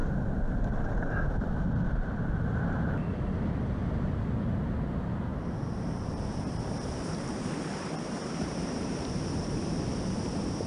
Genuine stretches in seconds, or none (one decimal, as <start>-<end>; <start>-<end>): 0.0-5.3; 9.3-10.7